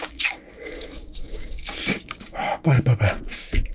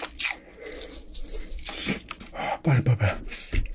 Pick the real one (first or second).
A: second